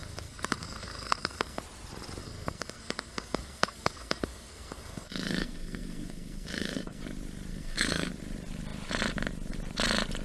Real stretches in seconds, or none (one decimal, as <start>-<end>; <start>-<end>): 1.6-2.2; 7.0-7.5; 8.1-10.2